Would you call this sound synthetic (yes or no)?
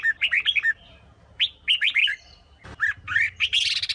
no